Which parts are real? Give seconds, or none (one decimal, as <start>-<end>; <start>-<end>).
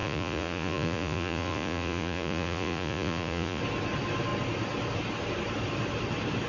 3.6-6.5